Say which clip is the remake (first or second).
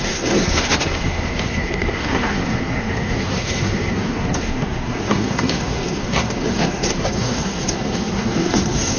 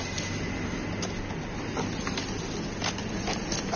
first